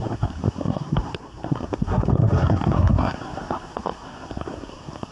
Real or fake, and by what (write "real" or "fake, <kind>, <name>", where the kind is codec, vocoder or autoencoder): fake, codec, SNAC